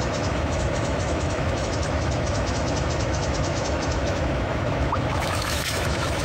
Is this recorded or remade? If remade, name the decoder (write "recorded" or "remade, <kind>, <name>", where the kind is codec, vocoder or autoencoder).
remade, autoencoder, DAC-VAE